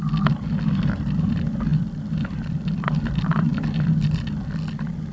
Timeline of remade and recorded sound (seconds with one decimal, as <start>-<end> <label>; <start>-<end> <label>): 0.0-5.1 recorded